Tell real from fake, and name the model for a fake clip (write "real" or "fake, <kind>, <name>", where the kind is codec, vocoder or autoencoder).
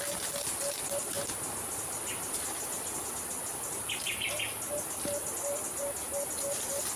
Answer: real